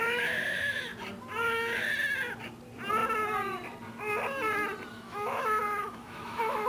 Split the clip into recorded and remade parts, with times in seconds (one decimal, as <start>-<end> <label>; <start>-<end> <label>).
0.0-0.9 remade; 0.9-4.9 recorded; 4.9-6.7 remade